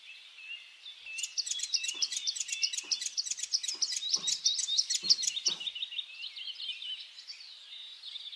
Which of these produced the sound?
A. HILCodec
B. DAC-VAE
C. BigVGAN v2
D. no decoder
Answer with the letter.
D